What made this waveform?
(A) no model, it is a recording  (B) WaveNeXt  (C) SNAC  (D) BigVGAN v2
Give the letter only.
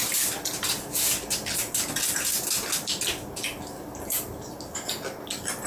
A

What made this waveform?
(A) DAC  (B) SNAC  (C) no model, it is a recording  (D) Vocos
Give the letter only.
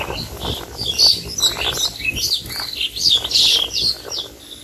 C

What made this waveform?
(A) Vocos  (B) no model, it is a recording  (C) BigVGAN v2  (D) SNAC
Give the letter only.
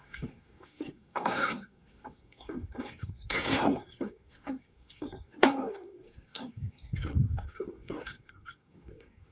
D